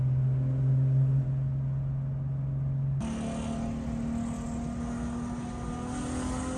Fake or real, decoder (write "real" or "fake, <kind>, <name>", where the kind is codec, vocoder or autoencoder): real